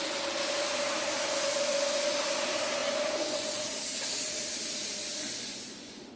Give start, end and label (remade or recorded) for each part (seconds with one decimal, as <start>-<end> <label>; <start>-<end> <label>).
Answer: 0.0-1.7 recorded; 1.7-2.2 remade; 2.2-2.8 recorded; 2.8-3.7 remade; 3.7-5.0 recorded; 5.0-6.2 remade